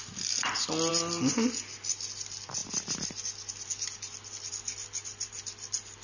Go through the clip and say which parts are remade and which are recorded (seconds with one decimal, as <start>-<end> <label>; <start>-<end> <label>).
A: 0.0-6.0 recorded

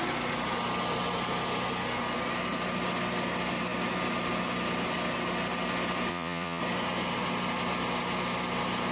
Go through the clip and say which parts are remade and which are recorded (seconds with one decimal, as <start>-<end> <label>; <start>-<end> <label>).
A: 0.0-6.1 recorded; 6.1-6.6 remade; 6.6-8.9 recorded

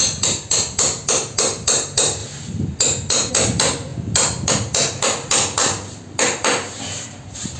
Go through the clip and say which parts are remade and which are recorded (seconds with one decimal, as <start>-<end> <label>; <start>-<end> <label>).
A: 0.0-7.6 recorded

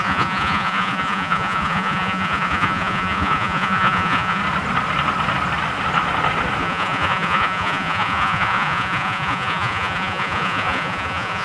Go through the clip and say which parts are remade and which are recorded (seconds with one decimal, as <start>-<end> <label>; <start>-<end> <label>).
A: 0.0-4.4 remade; 4.4-6.6 recorded; 6.6-11.4 remade

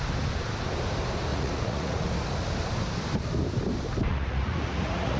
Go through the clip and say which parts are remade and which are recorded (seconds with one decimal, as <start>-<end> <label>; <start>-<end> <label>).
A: 0.0-1.3 recorded; 1.3-2.1 remade; 2.1-4.1 recorded; 4.1-5.2 remade